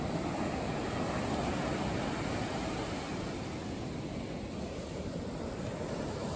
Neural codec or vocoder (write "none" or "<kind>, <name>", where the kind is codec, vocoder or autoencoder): none